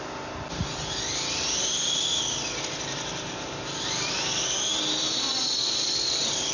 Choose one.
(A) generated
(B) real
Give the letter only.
B